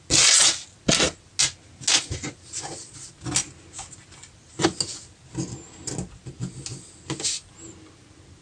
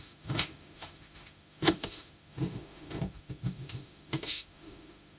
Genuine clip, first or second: first